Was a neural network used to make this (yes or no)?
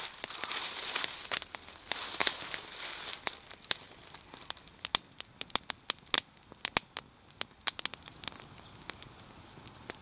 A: no